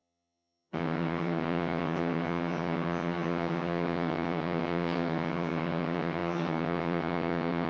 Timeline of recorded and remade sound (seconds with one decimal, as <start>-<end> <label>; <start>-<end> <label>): 0.0-7.7 remade